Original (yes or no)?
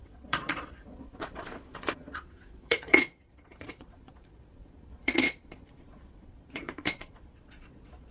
no